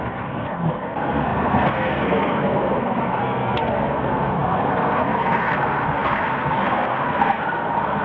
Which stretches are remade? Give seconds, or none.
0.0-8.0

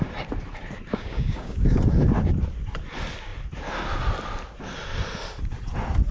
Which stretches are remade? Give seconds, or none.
0.9-1.8

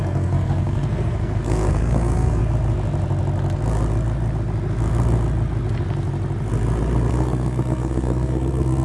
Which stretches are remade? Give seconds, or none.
0.0-2.4; 7.1-8.8

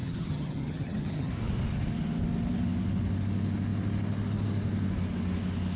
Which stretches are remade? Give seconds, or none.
0.0-1.3

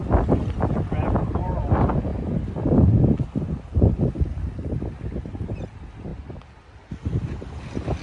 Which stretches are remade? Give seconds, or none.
none

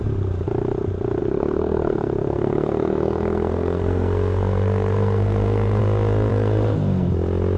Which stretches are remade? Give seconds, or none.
1.2-5.8; 6.3-7.1